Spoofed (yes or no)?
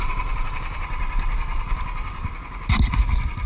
yes